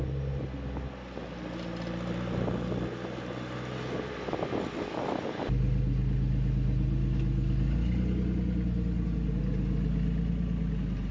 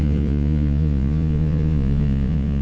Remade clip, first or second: second